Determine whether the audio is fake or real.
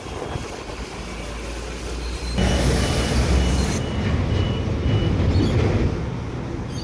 real